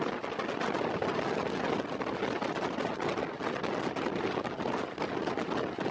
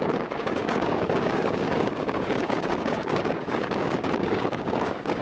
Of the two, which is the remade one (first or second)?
second